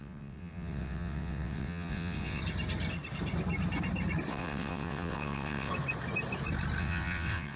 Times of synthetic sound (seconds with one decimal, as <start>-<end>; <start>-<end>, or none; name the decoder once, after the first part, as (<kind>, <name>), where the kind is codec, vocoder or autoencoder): 0.0-2.4 (vocoder, WaveNeXt); 4.3-5.7; 6.8-7.6